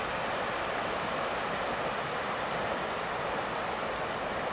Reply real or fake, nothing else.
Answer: real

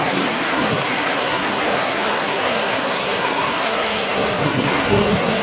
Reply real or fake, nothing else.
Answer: fake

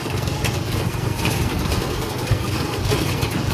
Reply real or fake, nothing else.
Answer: fake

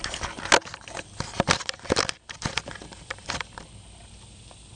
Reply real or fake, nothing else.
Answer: real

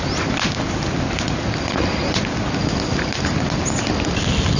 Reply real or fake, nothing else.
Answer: real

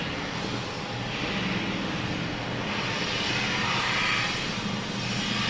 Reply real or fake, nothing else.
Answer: real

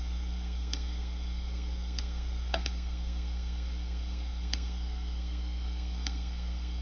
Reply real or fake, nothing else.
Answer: fake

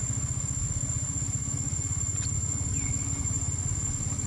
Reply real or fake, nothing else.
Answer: real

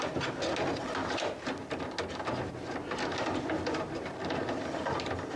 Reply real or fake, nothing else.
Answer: real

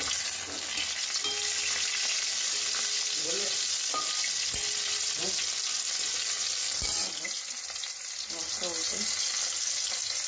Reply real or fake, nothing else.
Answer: real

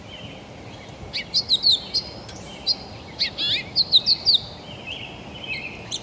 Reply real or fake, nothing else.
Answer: real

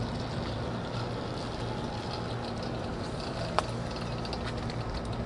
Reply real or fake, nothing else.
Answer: real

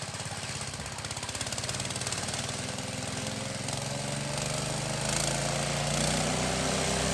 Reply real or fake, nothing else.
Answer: real